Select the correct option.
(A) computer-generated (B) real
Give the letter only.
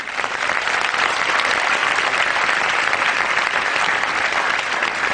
B